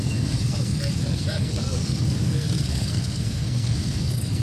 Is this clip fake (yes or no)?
yes